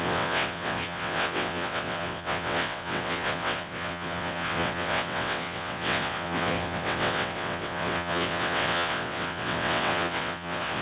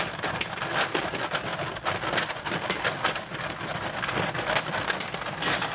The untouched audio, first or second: second